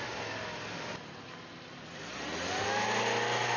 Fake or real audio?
real